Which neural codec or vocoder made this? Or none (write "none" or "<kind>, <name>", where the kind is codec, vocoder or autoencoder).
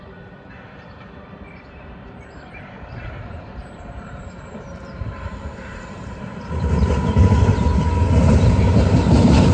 vocoder, BigVGAN v2